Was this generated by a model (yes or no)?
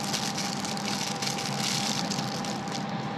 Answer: no